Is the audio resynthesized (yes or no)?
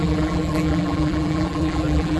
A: yes